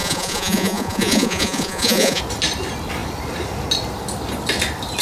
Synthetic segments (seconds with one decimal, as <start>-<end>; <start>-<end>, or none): 0.0-2.2